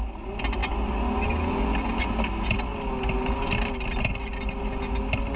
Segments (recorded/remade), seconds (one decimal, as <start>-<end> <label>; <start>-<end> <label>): 0.0-5.4 recorded